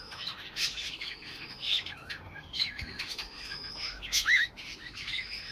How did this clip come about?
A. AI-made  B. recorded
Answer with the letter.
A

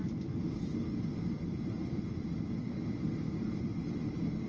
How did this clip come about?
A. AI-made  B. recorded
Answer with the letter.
B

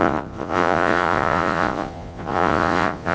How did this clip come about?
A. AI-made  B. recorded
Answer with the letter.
A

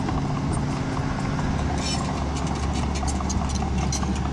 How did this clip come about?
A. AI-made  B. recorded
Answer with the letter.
B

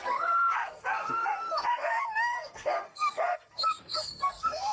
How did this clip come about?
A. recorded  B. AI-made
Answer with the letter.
B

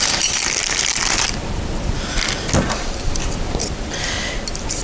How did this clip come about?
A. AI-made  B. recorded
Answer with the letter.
A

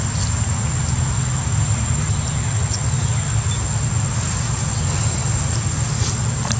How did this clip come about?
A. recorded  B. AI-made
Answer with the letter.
A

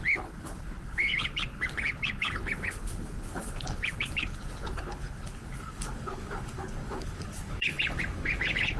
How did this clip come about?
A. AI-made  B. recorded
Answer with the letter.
A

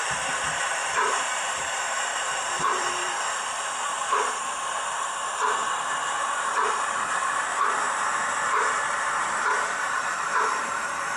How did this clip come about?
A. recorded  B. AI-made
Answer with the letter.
B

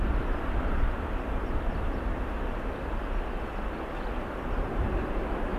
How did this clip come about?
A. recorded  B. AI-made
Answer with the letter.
A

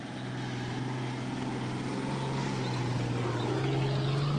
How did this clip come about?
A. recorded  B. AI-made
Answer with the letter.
A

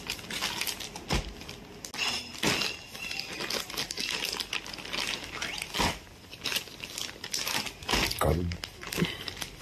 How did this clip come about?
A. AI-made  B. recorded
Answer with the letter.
B